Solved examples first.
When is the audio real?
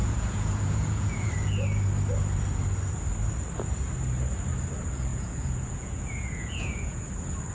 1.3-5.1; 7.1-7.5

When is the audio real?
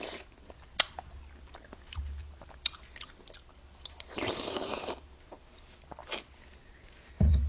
0.0-2.2; 3.1-6.6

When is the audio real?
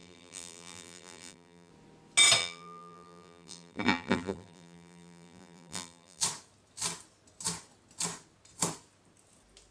1.7-2.4; 6.2-9.7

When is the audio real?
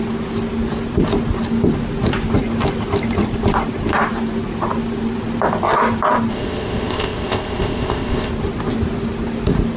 0.0-6.3; 8.3-9.8